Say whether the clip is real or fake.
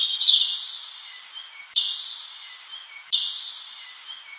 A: real